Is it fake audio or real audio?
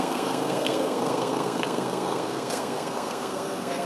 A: fake